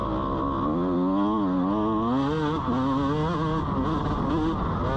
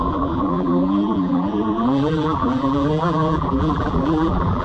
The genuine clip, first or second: first